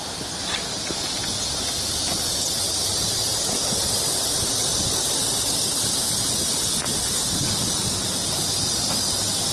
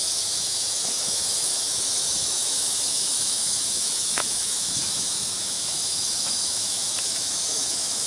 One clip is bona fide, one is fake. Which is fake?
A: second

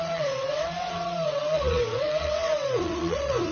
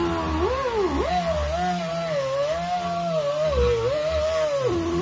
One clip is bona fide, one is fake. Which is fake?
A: first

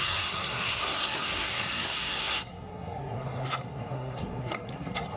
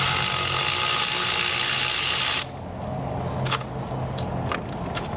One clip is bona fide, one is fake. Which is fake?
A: first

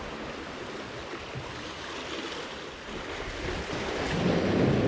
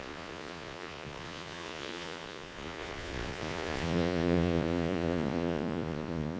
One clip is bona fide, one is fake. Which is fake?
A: second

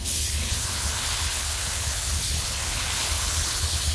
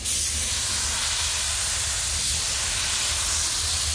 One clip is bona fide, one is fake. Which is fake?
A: first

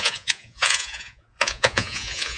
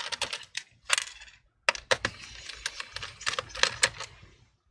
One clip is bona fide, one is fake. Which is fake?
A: first